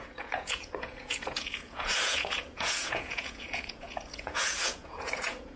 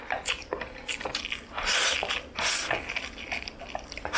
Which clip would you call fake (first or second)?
first